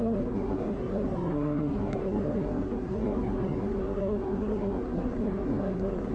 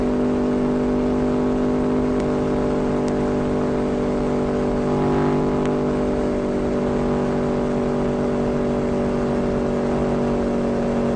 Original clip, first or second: second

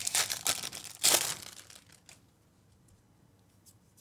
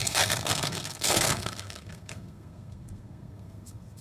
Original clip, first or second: first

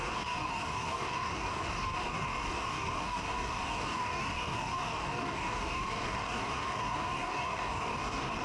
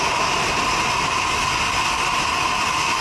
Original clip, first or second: second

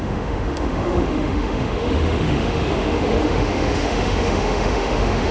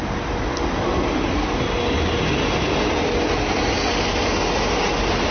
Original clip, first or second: second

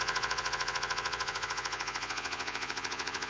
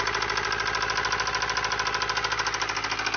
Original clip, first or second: second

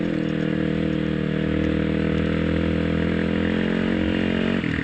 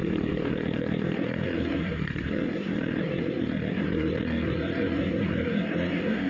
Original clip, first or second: first